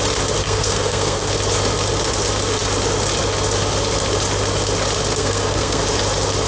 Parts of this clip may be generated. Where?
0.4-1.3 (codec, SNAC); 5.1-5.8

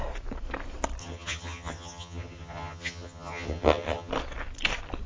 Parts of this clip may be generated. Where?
1.0-4.1 (vocoder, HiFi-GAN)

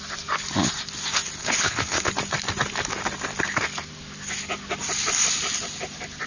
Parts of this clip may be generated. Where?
1.4-2.1 (codec, HILCodec)

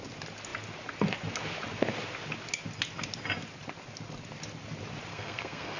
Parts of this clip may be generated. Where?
5.1-5.8 (codec, SNAC)

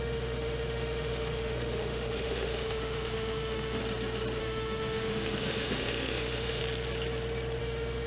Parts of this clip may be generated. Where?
0.0-3.8 (autoencoder, DAC-VAE); 4.4-6.6; 7.6-8.1